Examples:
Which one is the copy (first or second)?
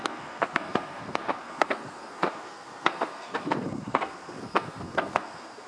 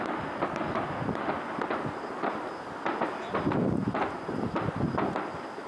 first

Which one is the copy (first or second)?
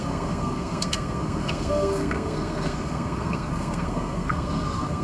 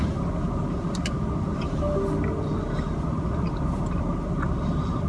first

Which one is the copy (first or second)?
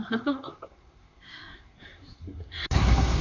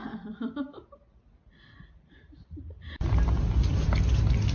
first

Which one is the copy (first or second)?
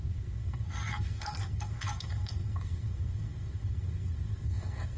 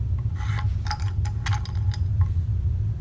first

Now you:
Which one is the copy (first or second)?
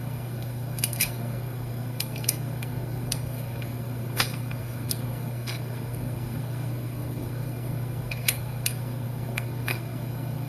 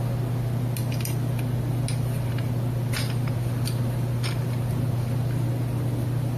first